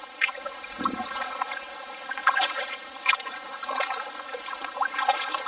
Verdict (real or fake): fake